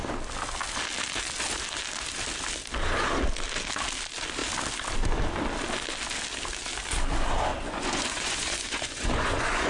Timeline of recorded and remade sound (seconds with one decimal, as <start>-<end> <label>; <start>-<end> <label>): 0.0-7.5 recorded; 7.5-9.7 remade